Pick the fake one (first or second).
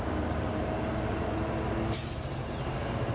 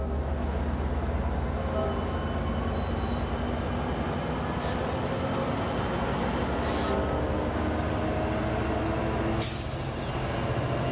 first